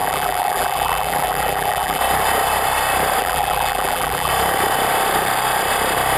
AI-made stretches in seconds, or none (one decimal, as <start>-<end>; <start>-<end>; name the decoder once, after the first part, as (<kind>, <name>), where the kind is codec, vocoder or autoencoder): 0.0-2.0 (vocoder, BigVGAN v2); 3.2-4.3